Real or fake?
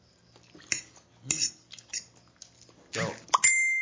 real